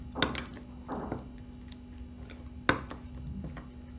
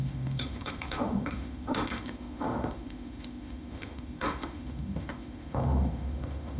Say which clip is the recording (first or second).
first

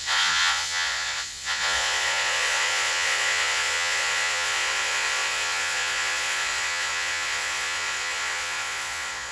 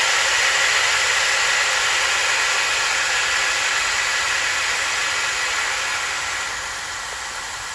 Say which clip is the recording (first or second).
second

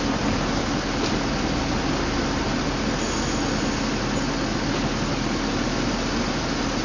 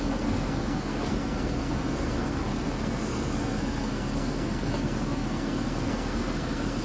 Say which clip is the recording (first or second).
first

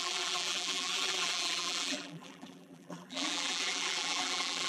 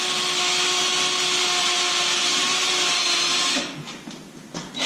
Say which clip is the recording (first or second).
second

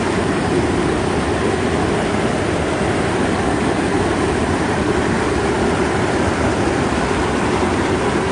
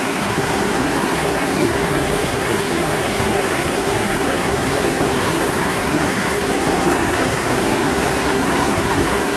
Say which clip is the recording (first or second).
first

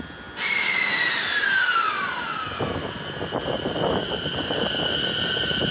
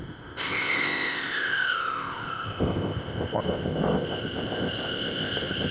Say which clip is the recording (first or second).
first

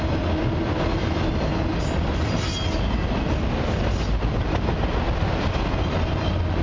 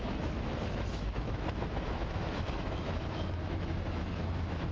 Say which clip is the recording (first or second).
first